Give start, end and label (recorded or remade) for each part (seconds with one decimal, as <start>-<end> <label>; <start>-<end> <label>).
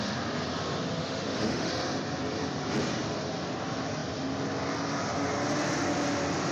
0.0-1.0 recorded; 1.0-1.7 remade; 1.7-6.5 recorded